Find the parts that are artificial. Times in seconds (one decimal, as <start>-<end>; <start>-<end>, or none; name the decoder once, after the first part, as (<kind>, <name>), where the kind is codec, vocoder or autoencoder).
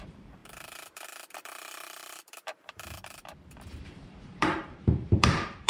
0.0-5.7 (vocoder, BigVGAN v2)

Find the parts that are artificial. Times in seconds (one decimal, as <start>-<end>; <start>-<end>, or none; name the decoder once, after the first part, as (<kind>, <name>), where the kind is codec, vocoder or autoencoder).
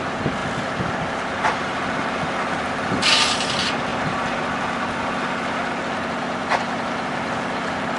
none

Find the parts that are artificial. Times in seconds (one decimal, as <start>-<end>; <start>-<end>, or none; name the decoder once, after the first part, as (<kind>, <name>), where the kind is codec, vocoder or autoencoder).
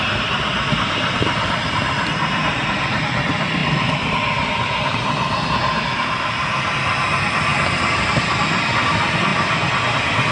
7.5-8.4 (vocoder, BigVGAN v2)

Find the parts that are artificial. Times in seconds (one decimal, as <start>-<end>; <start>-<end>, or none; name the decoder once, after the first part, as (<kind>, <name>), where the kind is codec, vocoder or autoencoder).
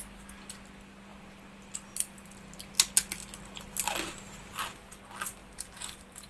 5.4-6.3 (vocoder, BigVGAN v2)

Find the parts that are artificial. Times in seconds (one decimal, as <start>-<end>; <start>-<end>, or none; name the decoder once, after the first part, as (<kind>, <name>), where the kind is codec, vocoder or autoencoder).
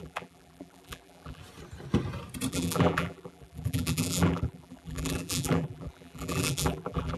0.0-1.4 (vocoder, BigVGAN v2); 2.5-7.2